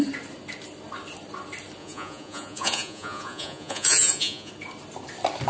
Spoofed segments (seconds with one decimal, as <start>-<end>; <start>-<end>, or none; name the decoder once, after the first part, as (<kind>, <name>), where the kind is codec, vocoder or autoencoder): 1.8-4.5 (vocoder, Vocos)